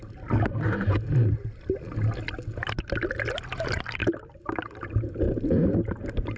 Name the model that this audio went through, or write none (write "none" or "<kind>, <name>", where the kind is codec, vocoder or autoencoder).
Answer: none